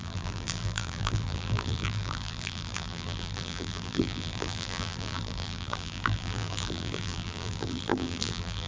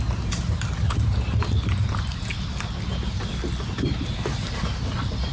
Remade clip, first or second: first